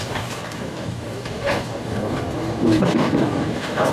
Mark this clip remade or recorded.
remade